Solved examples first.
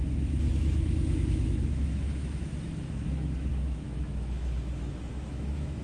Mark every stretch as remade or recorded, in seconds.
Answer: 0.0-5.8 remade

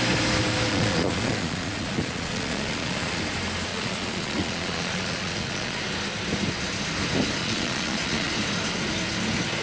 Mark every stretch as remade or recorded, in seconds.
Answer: 0.0-0.7 recorded; 0.7-3.2 remade; 3.2-3.7 recorded; 3.7-5.8 remade; 5.8-7.4 recorded; 7.4-8.3 remade; 8.3-9.6 recorded

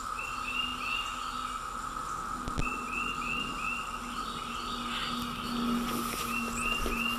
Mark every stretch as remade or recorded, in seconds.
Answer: 0.0-7.2 recorded

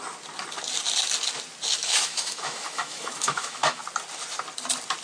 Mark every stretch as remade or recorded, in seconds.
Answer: 0.0-1.8 recorded; 1.8-3.8 remade; 3.8-5.0 recorded

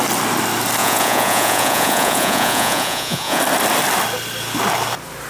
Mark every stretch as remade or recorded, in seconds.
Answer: 0.0-0.8 recorded; 0.8-3.4 remade; 3.4-5.3 recorded

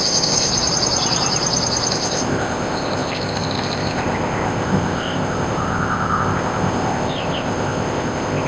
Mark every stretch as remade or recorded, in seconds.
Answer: 0.0-0.5 remade; 0.5-1.9 recorded; 1.9-8.5 remade

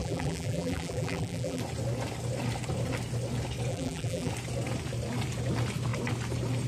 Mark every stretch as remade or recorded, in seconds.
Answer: 0.0-1.6 remade; 1.6-3.7 recorded; 3.7-4.3 remade; 4.3-6.7 recorded